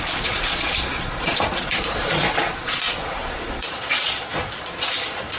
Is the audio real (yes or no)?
no